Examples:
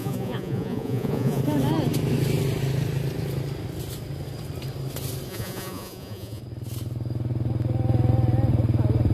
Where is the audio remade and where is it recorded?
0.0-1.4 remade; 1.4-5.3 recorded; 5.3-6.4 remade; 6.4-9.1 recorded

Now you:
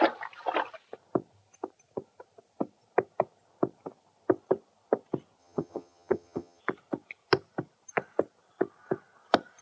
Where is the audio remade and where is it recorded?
0.0-5.4 recorded; 5.4-6.6 remade; 6.6-9.6 recorded

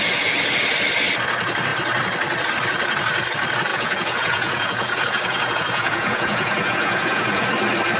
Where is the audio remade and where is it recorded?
0.0-3.7 recorded; 3.7-7.5 remade; 7.5-8.0 recorded

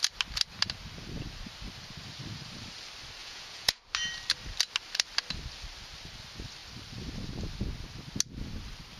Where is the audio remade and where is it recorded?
0.0-3.2 recorded; 3.2-3.8 remade; 3.8-9.0 recorded

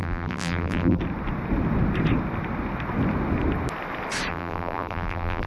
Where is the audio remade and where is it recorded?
0.0-1.0 remade; 1.0-4.3 recorded; 4.3-5.5 remade

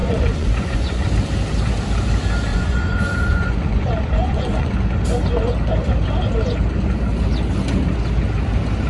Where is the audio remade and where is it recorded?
0.0-1.1 remade; 1.1-2.5 recorded; 2.5-4.7 remade; 4.7-8.9 recorded

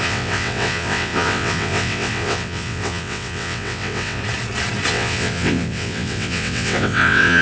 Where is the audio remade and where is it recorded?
0.0-4.2 remade; 4.2-4.9 recorded; 4.9-7.4 remade

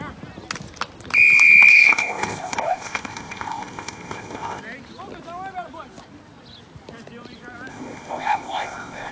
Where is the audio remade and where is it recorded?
0.0-1.7 recorded; 1.7-4.6 remade; 4.6-7.7 recorded; 7.7-9.1 remade